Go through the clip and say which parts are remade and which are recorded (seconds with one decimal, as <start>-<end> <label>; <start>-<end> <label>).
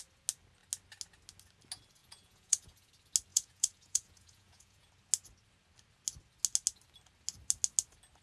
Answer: 0.0-2.0 recorded; 2.0-2.9 remade; 2.9-3.3 recorded; 3.3-4.9 remade; 4.9-8.2 recorded